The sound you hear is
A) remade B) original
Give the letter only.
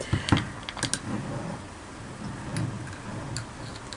B